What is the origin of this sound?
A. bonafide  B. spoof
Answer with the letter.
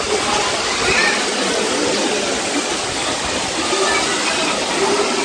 A